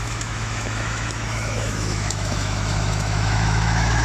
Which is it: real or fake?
fake